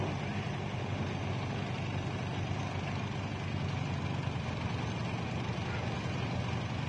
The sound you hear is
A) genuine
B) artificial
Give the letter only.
A